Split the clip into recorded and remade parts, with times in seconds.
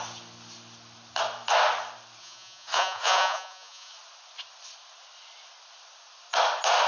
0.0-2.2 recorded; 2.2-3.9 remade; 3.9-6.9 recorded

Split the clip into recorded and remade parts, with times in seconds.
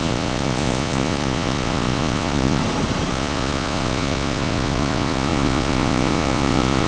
0.0-2.6 remade; 2.6-3.1 recorded; 3.1-6.9 remade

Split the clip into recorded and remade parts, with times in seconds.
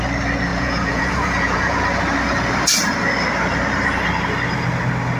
0.0-0.5 recorded; 0.5-1.8 remade; 1.8-5.2 recorded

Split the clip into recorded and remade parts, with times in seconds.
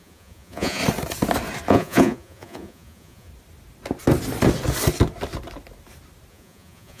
0.0-0.8 remade; 0.8-1.7 recorded; 1.7-3.3 remade; 3.3-6.3 recorded; 6.3-7.0 remade